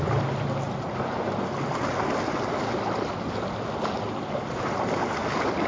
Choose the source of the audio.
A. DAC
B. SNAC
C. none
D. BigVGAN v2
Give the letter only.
C